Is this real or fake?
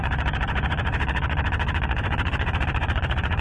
fake